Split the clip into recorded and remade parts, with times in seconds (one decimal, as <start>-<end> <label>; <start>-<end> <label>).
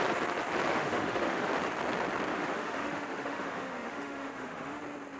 0.0-0.7 recorded; 0.7-1.5 remade; 1.5-2.3 recorded; 2.3-4.8 remade; 4.8-5.2 recorded